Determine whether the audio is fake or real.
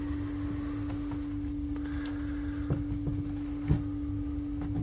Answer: real